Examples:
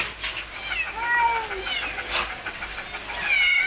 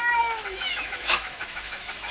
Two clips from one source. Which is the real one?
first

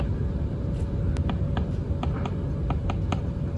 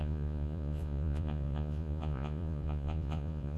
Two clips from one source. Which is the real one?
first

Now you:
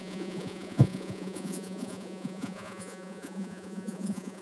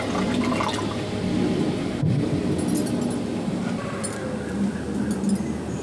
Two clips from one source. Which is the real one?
second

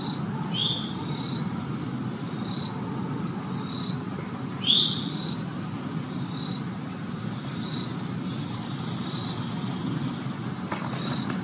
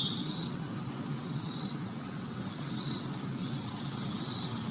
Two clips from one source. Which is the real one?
first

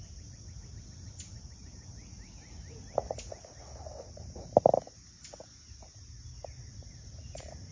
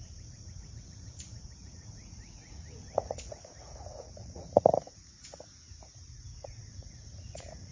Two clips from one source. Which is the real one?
first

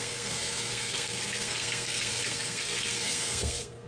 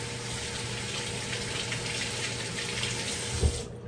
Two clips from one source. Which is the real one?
second